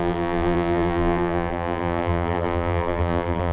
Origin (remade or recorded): remade